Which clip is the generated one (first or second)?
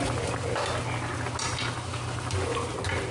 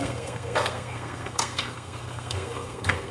second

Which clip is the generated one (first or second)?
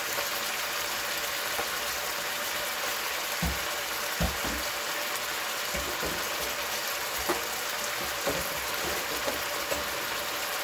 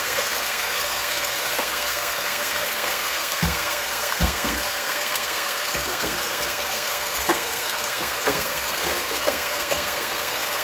second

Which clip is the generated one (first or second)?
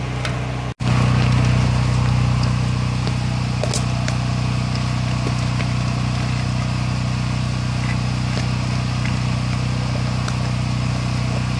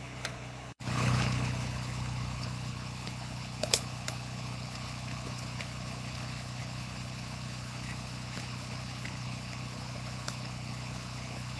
second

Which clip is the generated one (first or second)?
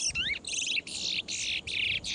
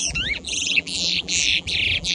second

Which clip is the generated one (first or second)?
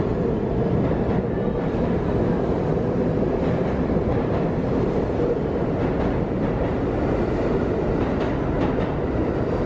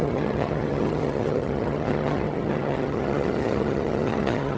second